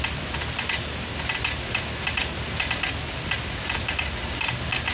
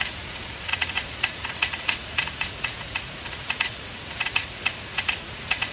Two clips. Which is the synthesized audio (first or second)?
second